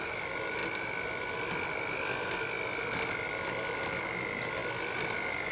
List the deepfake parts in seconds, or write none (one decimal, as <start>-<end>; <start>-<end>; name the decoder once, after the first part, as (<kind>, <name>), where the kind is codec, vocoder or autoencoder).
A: none

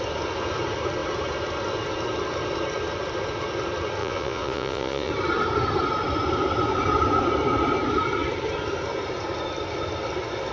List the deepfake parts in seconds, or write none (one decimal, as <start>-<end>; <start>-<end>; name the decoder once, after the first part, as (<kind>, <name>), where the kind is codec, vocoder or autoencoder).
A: 4.0-5.1 (vocoder, Vocos)